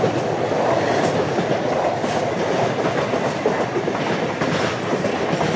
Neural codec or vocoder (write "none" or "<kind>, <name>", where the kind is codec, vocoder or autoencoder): none